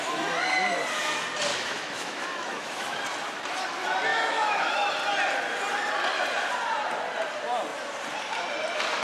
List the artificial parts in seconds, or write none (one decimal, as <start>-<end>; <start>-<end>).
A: 1.5-3.0; 4.1-4.9